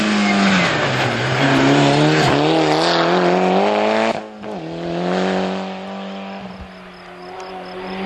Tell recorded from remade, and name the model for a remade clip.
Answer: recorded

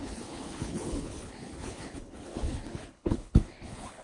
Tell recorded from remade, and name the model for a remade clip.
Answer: remade, codec, HILCodec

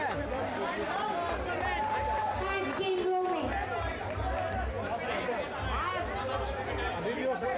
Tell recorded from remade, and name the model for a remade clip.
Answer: recorded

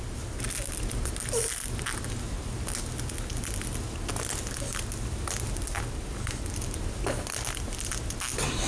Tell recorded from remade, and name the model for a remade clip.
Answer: recorded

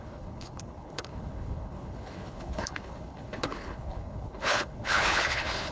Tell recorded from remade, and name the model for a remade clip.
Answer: remade, codec, HILCodec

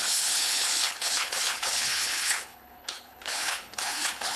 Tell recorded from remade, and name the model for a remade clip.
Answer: remade, codec, HILCodec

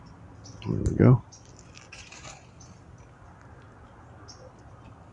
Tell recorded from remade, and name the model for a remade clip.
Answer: recorded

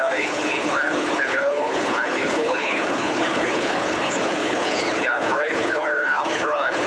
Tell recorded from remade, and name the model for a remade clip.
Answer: remade, codec, HILCodec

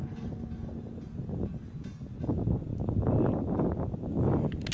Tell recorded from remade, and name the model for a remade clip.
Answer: recorded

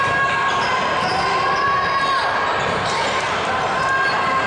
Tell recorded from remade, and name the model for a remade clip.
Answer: recorded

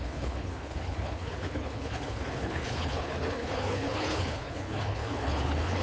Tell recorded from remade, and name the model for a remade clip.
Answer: remade, codec, HILCodec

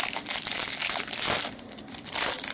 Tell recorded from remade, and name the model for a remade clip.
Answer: recorded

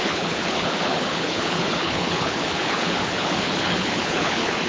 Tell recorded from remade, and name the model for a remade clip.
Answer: remade, codec, HILCodec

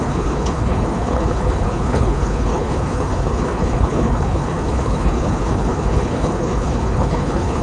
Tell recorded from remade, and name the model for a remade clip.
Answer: remade, codec, HILCodec